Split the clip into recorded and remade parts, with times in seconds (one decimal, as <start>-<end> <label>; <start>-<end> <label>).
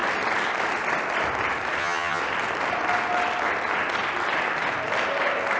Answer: 0.0-1.8 recorded; 1.8-2.2 remade; 2.2-5.6 recorded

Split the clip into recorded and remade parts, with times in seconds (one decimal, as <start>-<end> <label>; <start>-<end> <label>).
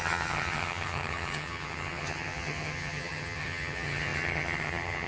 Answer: 0.0-5.1 remade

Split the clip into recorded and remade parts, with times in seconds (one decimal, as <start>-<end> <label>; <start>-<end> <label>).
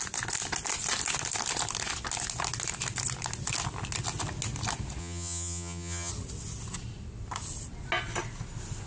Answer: 0.0-5.0 recorded; 5.0-6.1 remade; 6.1-8.9 recorded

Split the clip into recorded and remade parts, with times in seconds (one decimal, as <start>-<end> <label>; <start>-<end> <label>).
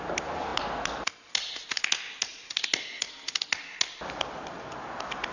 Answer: 0.0-5.3 recorded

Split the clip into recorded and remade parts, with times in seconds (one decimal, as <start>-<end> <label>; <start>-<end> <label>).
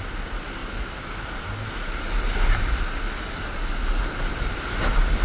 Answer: 0.0-5.2 recorded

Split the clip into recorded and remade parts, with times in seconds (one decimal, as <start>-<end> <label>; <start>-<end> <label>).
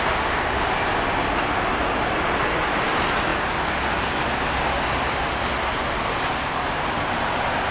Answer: 0.0-7.7 recorded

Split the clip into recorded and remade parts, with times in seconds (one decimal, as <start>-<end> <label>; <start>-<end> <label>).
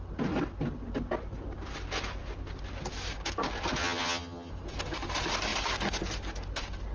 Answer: 0.0-3.8 recorded; 3.8-4.5 remade; 4.5-6.9 recorded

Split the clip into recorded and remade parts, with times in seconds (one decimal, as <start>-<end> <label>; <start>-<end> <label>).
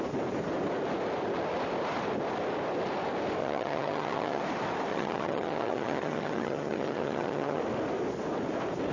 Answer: 0.0-3.4 recorded; 3.4-4.4 remade; 4.4-4.9 recorded; 4.9-7.6 remade; 7.6-8.9 recorded